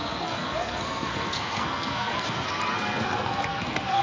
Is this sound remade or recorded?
remade